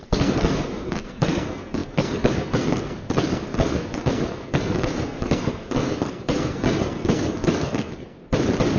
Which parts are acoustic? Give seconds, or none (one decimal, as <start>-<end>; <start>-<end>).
8.2-8.8